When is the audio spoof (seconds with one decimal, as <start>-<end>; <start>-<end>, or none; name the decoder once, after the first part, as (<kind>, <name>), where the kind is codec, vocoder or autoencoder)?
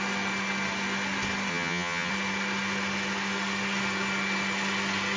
1.5-2.1 (vocoder, HiFi-GAN)